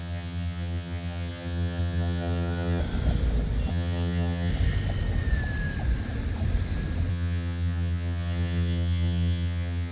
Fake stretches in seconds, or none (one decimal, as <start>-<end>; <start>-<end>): 0.0-2.8; 3.7-4.5; 7.1-9.9